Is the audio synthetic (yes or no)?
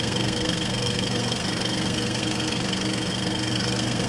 yes